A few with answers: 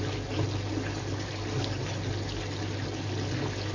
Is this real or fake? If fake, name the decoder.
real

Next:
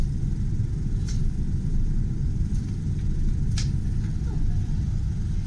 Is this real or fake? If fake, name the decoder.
real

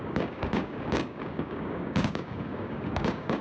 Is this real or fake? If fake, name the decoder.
fake, codec, DAC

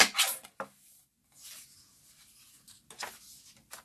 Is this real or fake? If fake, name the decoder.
real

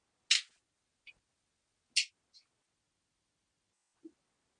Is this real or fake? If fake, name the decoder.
real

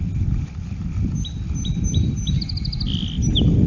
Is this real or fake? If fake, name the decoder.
real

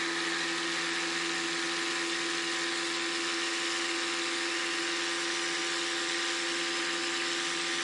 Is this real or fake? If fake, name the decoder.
real